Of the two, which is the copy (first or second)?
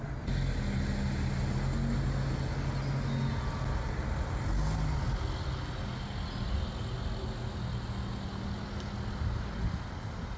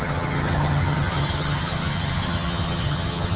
second